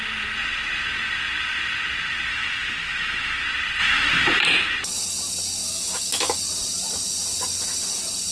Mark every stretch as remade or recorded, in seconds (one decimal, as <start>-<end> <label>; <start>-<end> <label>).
0.0-2.3 recorded; 2.3-3.4 remade; 3.4-3.8 recorded; 3.8-4.4 remade; 4.4-5.6 recorded; 5.6-6.4 remade; 6.4-8.3 recorded

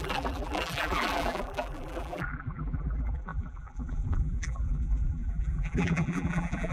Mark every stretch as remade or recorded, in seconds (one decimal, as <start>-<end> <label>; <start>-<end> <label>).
0.0-6.7 remade

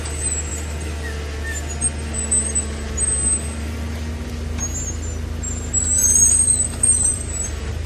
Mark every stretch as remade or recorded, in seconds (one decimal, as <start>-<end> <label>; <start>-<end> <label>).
0.0-6.0 recorded; 6.0-7.9 remade

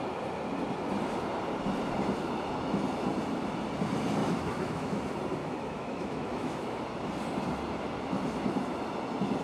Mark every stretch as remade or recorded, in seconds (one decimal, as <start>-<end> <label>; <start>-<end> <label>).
0.0-4.2 recorded; 4.2-5.0 remade; 5.0-5.4 recorded; 5.4-6.8 remade; 6.8-9.4 recorded

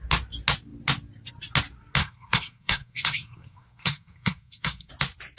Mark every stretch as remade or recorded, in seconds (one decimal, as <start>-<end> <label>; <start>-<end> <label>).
0.0-2.0 recorded; 2.0-4.9 remade; 4.9-5.4 recorded

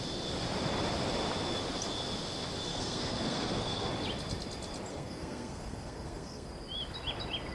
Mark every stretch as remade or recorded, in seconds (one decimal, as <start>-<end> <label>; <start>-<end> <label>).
0.0-2.7 recorded; 2.7-3.9 remade; 3.9-4.9 recorded; 4.9-6.5 remade; 6.5-7.5 recorded

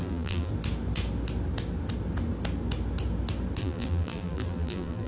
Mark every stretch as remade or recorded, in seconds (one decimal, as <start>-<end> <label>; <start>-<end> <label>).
0.0-0.5 remade; 0.5-3.6 recorded; 3.6-5.1 remade

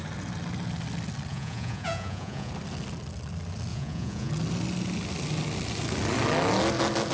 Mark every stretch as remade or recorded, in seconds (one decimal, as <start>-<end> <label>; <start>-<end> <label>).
0.0-1.3 recorded; 1.3-2.5 remade; 2.5-3.7 recorded; 3.7-4.3 remade; 4.3-7.1 recorded